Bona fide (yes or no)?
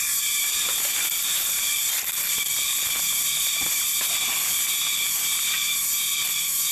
yes